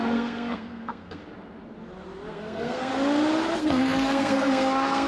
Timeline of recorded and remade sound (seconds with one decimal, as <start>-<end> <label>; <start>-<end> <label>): 0.0-1.2 remade; 1.2-2.3 recorded; 2.3-2.9 remade; 2.9-3.6 recorded; 3.6-5.1 remade